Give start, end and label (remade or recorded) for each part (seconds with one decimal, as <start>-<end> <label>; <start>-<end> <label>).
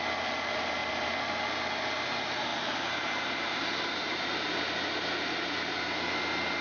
0.0-2.5 recorded; 2.5-4.3 remade; 4.3-5.3 recorded; 5.3-5.9 remade; 5.9-6.6 recorded